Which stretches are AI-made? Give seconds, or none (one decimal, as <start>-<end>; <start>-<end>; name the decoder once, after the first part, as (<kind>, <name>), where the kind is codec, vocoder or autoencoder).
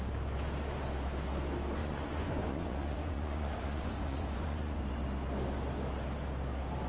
1.8-4.8 (vocoder, Vocos)